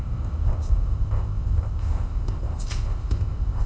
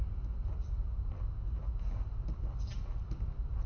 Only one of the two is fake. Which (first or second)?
first